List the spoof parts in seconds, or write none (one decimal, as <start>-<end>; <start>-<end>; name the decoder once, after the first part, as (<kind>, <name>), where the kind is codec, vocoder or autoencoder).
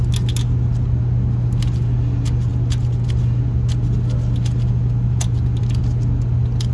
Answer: none